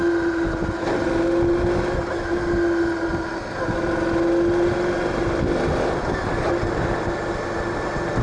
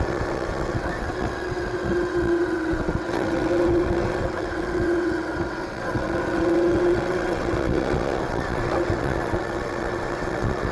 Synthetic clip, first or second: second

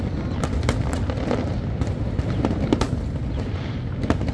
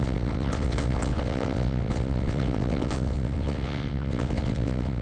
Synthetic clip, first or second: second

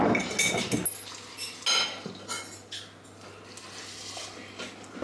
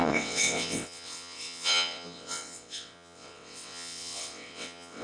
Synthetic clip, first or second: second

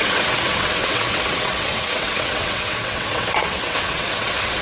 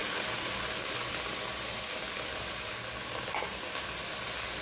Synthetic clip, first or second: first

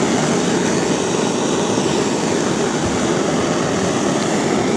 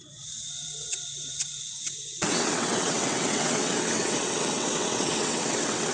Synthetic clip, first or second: second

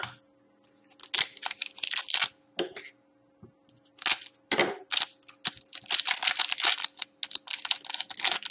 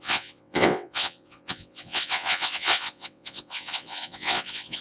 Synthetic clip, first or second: second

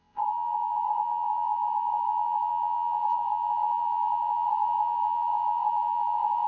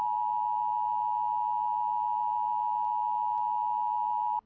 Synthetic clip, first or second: first